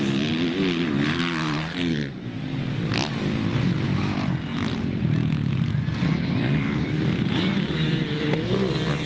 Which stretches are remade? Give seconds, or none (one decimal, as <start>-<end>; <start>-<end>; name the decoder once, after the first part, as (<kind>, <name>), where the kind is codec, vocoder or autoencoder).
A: none